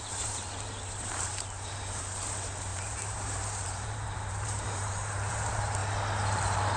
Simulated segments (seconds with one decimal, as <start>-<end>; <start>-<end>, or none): 0.0-5.8; 6.3-6.8